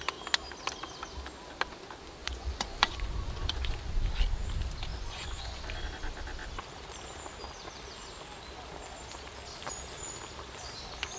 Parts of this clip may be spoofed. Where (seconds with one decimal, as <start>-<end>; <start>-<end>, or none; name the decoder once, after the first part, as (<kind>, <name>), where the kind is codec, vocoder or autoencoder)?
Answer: 2.2-3.9 (vocoder, Vocos); 4.9-5.6